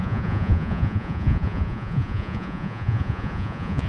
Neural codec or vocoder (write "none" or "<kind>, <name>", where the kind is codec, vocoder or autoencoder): vocoder, Vocos